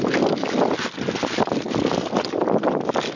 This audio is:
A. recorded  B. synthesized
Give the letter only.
A